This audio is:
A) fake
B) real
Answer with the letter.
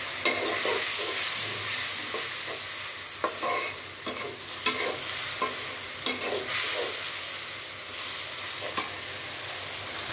B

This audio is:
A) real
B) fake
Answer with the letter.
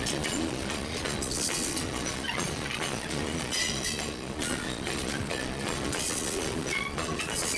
B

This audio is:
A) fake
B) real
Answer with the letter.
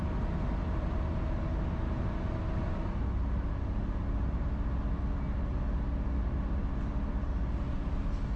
B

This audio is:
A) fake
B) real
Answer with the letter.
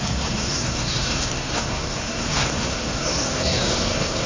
A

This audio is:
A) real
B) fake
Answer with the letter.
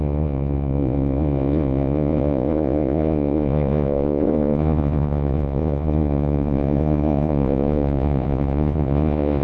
B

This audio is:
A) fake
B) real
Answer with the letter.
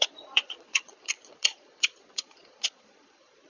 A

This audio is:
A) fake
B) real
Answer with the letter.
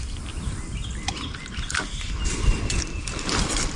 B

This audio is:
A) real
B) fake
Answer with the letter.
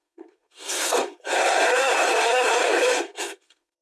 B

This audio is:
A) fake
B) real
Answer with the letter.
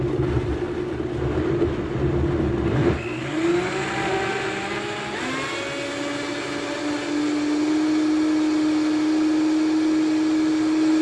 B